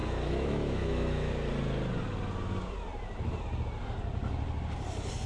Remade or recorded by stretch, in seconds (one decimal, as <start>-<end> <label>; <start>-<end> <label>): 0.0-1.3 remade; 1.3-5.3 recorded